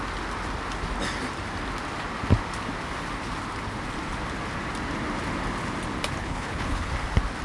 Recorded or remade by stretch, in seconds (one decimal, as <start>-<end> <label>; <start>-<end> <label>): 0.0-6.2 recorded; 6.2-6.9 remade; 6.9-7.4 recorded